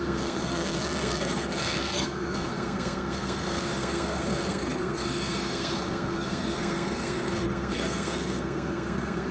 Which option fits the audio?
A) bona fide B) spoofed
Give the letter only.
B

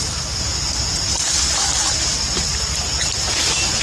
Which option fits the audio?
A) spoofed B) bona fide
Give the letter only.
B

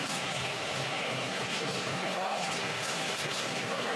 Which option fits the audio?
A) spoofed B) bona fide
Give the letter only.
A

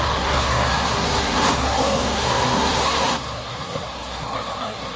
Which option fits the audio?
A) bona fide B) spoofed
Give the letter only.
B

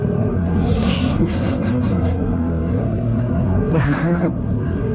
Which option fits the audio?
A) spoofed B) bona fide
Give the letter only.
A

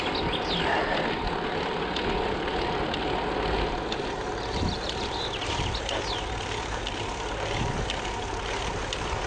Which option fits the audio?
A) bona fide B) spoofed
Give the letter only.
A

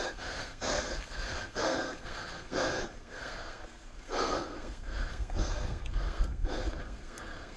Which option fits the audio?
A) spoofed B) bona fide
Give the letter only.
A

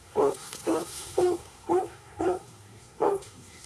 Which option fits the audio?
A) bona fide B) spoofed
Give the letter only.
B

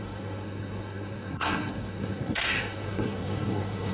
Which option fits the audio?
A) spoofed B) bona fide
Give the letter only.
A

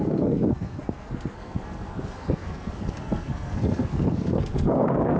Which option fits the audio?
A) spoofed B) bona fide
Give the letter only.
A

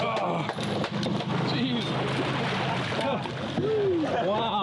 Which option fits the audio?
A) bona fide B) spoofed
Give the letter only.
A